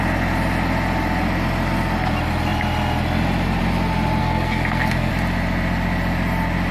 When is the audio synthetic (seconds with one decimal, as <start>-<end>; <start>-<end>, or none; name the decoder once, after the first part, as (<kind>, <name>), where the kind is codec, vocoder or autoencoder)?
4.2-5.1 (codec, SNAC)